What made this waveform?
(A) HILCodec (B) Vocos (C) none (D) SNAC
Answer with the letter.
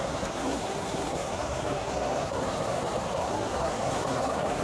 D